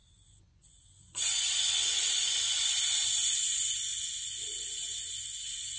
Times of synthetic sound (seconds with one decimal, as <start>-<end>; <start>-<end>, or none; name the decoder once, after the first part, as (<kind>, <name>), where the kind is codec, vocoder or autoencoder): 0.0-2.2 (vocoder, Vocos); 3.9-5.8